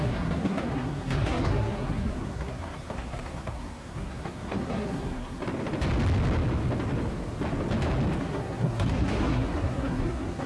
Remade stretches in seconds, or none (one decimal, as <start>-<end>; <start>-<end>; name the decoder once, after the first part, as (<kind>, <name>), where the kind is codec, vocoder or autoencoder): 0.0-5.4 (codec, SNAC); 8.2-10.5